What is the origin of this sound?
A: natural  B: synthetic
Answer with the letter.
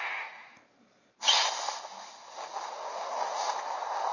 A